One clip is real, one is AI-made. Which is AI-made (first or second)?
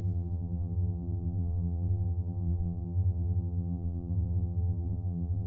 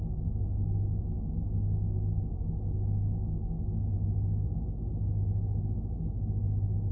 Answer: first